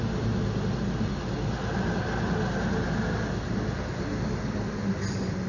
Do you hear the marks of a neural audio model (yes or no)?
no